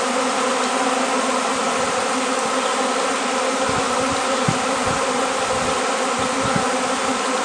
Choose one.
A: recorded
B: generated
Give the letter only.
A